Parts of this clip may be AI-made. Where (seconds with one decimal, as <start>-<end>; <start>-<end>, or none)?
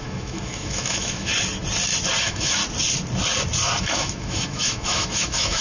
0.0-1.3; 2.2-2.6; 3.8-5.6